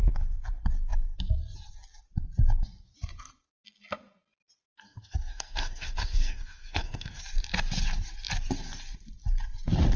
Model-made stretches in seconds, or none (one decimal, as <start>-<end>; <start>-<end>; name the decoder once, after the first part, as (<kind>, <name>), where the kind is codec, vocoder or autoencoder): 4.7-7.2 (codec, SNAC)